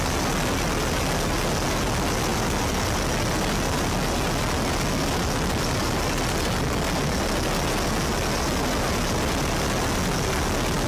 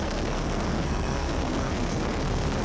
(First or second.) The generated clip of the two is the second